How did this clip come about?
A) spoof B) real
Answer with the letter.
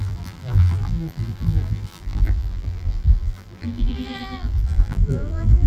A